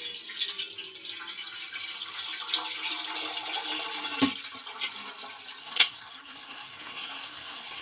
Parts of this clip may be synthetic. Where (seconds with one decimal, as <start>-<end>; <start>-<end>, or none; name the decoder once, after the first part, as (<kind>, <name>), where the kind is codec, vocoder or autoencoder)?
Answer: 5.6-7.8 (codec, SNAC)